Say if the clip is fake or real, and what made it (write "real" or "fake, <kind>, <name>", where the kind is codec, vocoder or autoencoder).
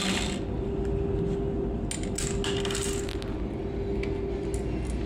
real